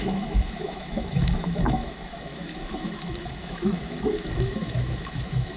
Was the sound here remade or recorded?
remade